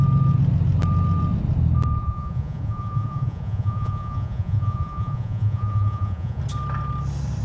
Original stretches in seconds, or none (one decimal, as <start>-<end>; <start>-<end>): 0.0-2.0; 6.4-7.4